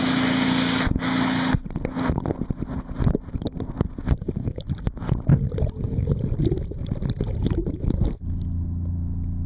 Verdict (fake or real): real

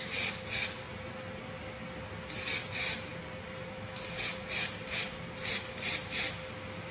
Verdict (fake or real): real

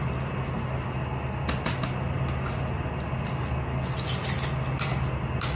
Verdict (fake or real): real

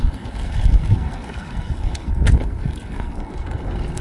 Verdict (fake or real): fake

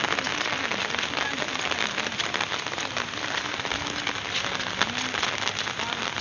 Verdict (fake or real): real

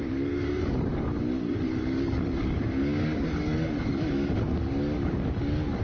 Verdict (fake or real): fake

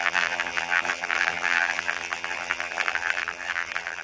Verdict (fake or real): fake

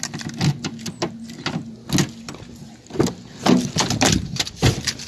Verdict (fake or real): real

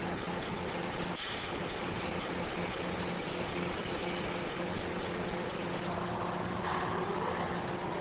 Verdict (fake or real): real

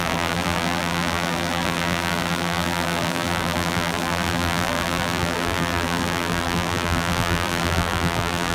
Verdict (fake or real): fake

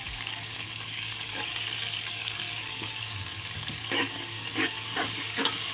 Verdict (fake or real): fake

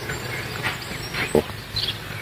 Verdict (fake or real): real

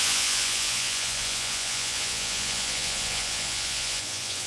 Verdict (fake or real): fake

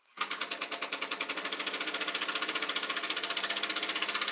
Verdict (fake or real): real